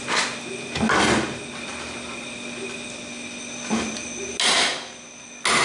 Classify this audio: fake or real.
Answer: real